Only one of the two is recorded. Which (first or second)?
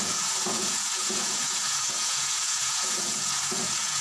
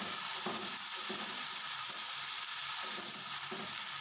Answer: second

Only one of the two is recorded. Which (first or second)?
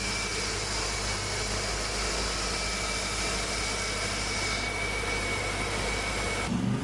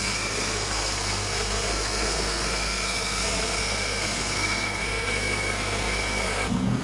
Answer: first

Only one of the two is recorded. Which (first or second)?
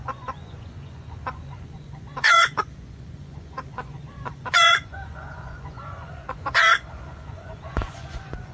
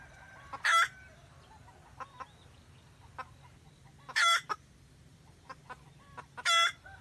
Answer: second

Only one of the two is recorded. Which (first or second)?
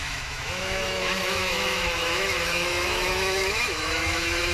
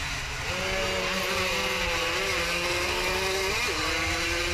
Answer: second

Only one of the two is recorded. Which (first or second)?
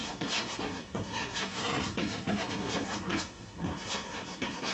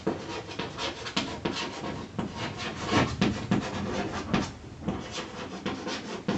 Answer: second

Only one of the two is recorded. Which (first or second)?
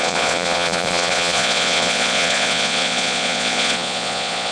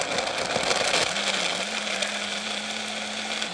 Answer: second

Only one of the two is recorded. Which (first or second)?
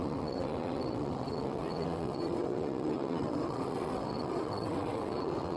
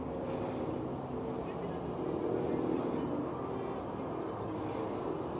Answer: second